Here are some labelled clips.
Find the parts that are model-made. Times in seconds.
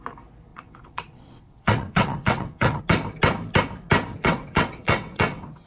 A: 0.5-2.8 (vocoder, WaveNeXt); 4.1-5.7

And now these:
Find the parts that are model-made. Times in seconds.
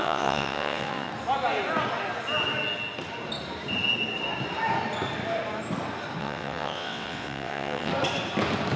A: 0.0-1.1 (vocoder, WaveNeXt); 6.2-7.9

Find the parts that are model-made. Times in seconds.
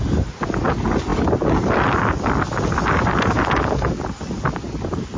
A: none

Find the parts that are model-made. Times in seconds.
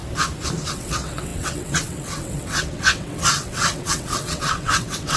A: 0.7-5.2 (vocoder, WaveNeXt)